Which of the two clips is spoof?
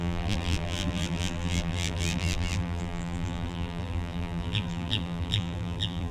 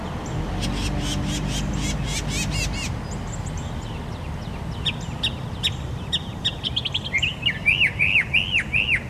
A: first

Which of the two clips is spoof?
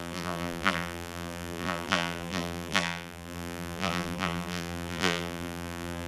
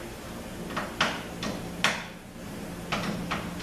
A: first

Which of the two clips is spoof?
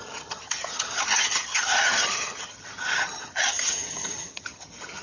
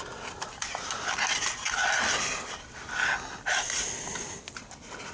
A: first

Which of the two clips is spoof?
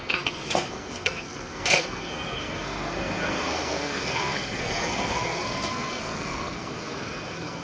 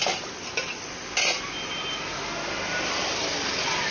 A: first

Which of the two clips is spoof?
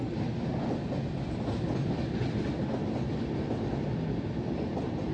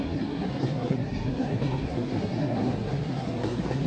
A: second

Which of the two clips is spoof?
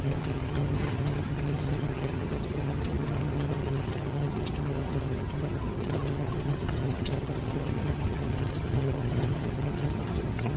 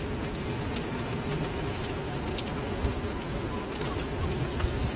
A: first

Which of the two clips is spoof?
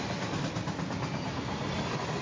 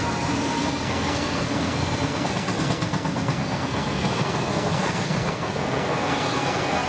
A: second